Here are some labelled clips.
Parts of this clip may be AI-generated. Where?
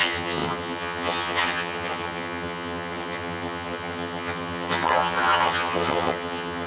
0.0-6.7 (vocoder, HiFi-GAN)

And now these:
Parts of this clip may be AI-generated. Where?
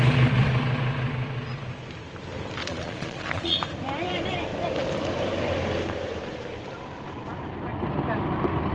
2.6-3.6 (vocoder, Vocos)